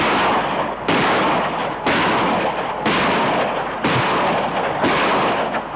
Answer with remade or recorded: recorded